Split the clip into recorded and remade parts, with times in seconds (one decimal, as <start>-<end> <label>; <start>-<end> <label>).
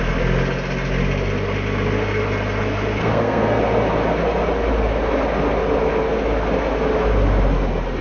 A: 0.0-3.0 recorded; 3.0-3.6 remade; 3.6-8.0 recorded